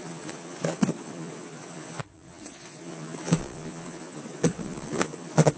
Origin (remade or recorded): remade